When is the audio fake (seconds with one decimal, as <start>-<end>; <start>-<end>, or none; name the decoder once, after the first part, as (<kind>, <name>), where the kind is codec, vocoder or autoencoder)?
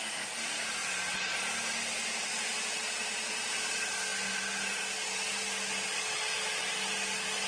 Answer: none